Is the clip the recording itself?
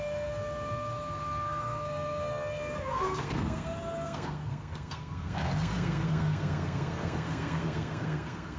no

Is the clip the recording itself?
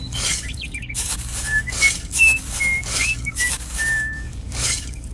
no